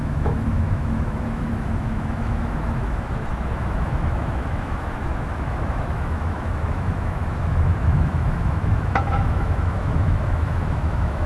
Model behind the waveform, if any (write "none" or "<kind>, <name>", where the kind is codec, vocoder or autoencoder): autoencoder, DAC-VAE